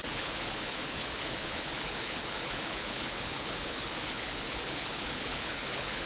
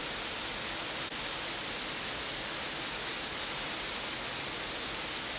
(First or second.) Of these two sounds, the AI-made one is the first